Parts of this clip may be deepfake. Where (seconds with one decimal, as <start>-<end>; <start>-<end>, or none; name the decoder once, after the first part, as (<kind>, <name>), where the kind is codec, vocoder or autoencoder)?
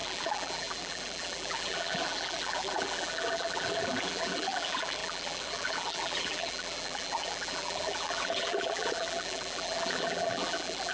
0.0-10.9 (vocoder, BigVGAN v2)